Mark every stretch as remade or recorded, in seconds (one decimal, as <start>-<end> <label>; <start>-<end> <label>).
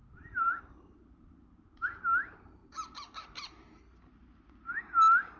0.0-0.6 remade; 0.6-2.6 recorded; 2.6-3.8 remade; 3.8-5.4 recorded